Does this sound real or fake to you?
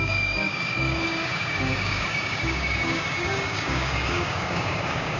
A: fake